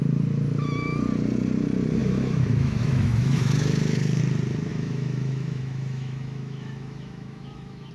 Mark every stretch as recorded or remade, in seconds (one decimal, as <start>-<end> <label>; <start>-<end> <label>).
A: 0.0-2.0 recorded; 2.0-4.2 remade; 4.2-4.7 recorded; 4.7-7.9 remade